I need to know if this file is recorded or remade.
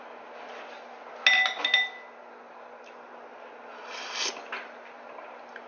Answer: recorded